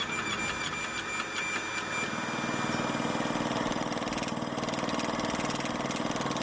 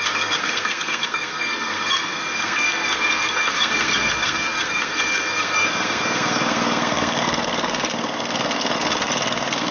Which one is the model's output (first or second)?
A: second